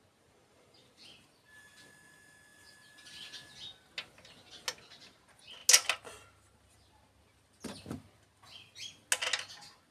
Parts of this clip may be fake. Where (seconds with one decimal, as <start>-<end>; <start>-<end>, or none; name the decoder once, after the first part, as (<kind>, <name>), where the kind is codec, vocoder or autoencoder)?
none